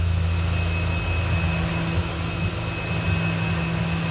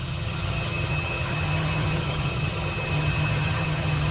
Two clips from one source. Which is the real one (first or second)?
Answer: first